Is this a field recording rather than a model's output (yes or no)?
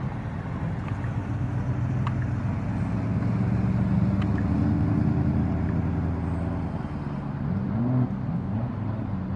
yes